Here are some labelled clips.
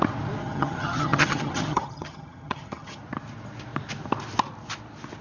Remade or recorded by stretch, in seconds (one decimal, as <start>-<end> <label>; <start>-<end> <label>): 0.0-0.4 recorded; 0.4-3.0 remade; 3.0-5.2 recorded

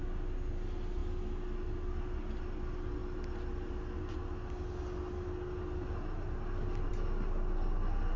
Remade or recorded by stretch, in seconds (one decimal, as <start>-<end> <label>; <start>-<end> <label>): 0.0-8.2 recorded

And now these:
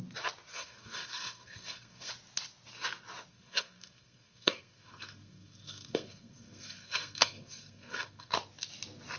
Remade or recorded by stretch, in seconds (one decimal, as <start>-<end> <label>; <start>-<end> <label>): 0.0-0.5 recorded; 0.5-2.1 remade; 2.1-3.3 recorded; 3.3-8.3 remade; 8.3-9.2 recorded